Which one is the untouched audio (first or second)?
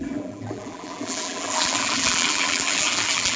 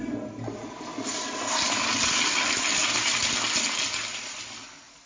second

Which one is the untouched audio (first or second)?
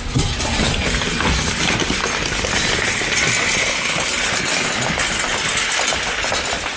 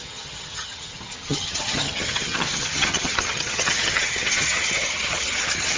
first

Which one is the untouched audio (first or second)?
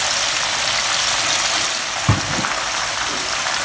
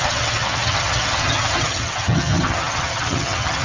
first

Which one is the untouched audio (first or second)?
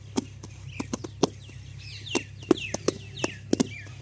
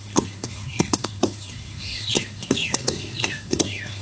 first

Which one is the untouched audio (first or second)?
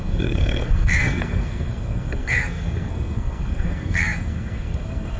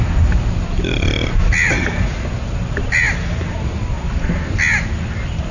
second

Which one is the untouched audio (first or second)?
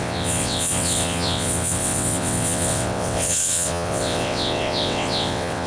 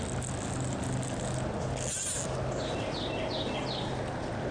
second